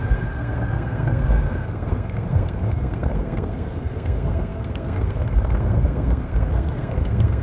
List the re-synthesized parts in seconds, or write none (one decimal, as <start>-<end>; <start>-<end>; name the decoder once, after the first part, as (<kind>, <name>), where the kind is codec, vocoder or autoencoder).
0.0-7.4 (codec, SNAC)